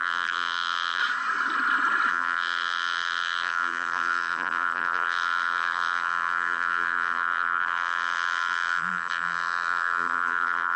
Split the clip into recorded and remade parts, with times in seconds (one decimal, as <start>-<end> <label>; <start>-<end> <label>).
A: 0.0-1.0 remade; 1.0-2.1 recorded; 2.1-10.8 remade